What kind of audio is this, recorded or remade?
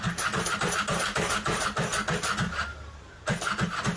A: recorded